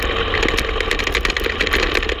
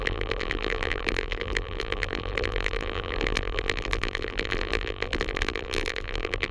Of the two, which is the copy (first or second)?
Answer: second